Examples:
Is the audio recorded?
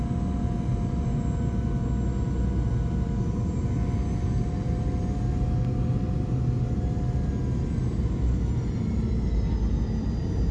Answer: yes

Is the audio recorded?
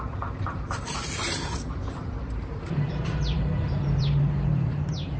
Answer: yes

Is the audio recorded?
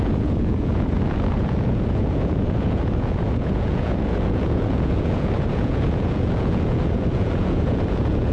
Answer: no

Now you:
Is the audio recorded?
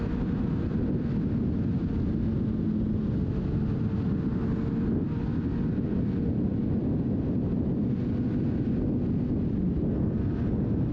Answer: yes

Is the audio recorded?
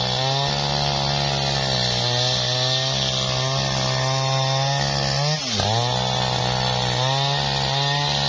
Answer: yes